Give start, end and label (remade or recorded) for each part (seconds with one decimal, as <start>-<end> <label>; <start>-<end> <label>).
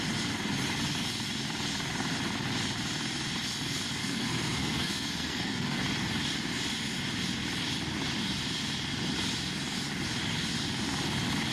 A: 0.0-4.0 recorded; 4.0-5.8 remade; 5.8-11.5 recorded